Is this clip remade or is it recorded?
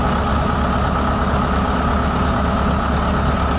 recorded